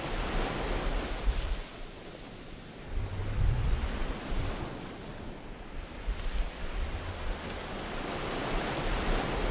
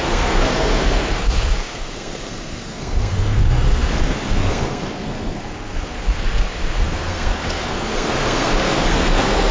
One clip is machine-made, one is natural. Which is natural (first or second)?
first